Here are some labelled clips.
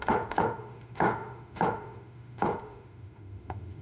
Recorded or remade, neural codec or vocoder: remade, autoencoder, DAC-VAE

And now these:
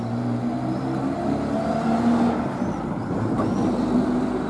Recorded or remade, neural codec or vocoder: recorded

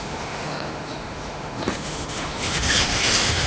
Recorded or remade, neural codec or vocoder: remade, autoencoder, DAC-VAE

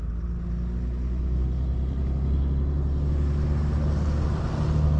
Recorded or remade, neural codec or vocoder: recorded